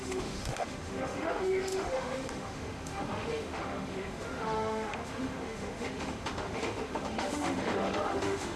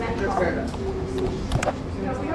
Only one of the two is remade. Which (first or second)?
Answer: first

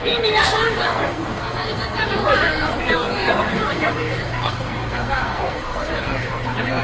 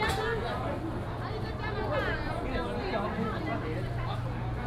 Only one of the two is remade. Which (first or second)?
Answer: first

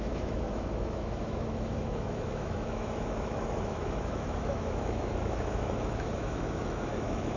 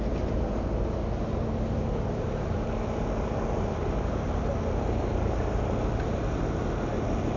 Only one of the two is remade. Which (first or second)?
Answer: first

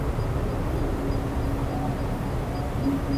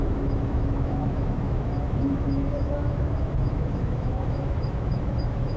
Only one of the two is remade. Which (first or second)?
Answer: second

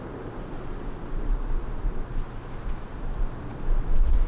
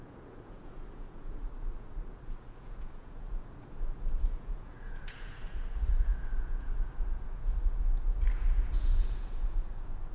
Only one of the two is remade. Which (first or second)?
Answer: second